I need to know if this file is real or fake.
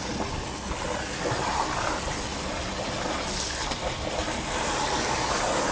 real